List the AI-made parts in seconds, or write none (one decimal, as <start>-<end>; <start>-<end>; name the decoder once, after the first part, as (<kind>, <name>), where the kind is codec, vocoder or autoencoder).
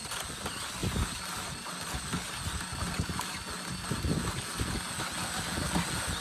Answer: none